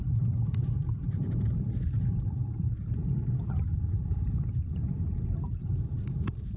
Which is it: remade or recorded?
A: remade